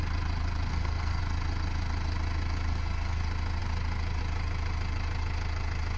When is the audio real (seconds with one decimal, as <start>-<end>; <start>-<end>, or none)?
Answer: 0.0-0.7; 1.2-2.7; 3.2-6.0